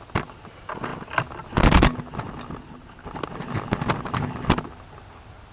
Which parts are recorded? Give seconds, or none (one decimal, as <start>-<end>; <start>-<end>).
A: 0.0-5.5